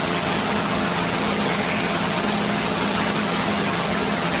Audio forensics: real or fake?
fake